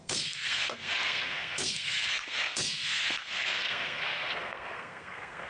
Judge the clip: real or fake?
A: fake